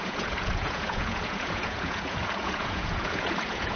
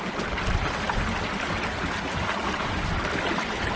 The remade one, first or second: first